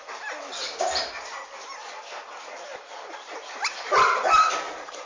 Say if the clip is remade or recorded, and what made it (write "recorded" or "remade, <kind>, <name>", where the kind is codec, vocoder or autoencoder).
recorded